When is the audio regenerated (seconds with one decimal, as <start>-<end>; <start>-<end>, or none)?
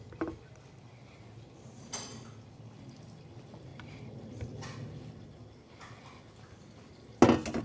none